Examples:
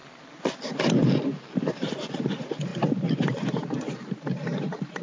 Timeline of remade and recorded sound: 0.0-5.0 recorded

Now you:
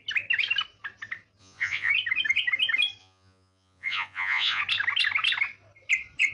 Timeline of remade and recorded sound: 0.0-1.4 recorded; 1.4-1.9 remade; 1.9-3.0 recorded; 3.0-4.6 remade; 4.6-6.3 recorded

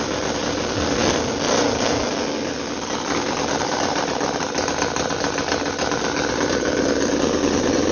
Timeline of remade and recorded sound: 0.0-7.9 recorded

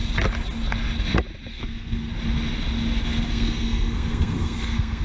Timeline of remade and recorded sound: 0.0-1.5 recorded; 1.5-2.1 remade; 2.1-3.3 recorded; 3.3-5.0 remade

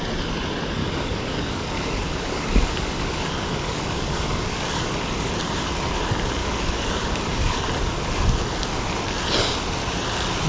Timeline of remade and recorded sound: 0.0-0.8 recorded; 0.8-5.3 remade; 5.3-6.4 recorded; 6.4-7.6 remade; 7.6-10.5 recorded

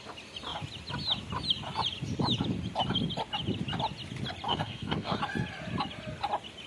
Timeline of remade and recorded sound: 0.0-4.5 recorded; 4.5-5.2 remade; 5.2-6.7 recorded

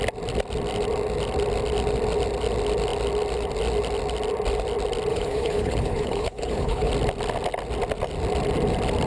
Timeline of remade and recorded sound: 0.0-5.1 recorded; 5.1-6.9 remade; 6.9-9.1 recorded